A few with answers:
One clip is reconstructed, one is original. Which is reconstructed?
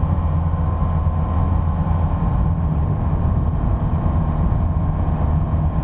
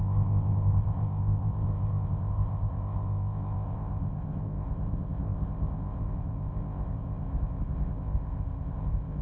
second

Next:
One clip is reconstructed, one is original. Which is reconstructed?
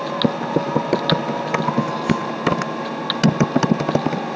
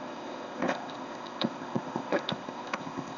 second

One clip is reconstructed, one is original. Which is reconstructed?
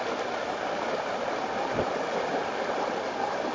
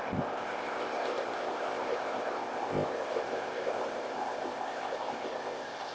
second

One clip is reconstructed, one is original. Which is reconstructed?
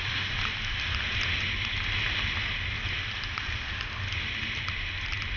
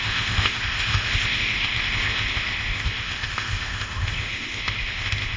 second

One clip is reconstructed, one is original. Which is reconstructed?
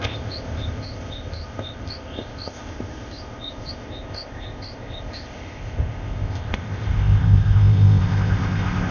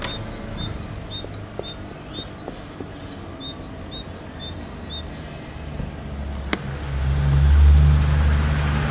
first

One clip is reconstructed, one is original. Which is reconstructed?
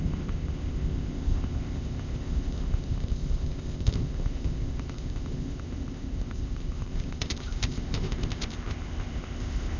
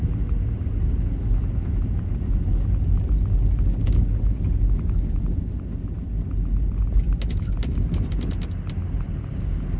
first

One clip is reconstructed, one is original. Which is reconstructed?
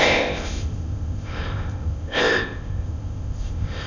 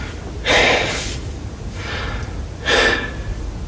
first